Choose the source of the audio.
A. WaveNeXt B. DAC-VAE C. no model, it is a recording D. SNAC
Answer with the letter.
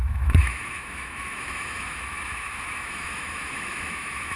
B